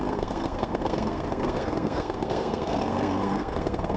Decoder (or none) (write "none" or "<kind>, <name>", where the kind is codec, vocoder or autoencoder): codec, SNAC